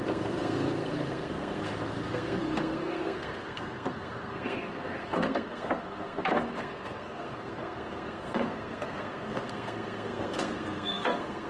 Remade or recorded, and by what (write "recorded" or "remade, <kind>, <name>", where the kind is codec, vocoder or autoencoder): remade, codec, SNAC